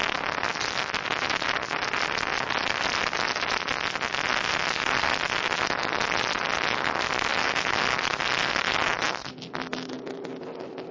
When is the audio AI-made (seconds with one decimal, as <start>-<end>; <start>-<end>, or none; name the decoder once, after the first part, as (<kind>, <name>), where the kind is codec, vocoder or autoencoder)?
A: none